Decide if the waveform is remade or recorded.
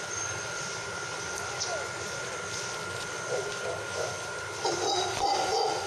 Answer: remade